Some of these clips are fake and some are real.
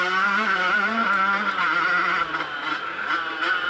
real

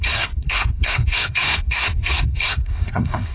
fake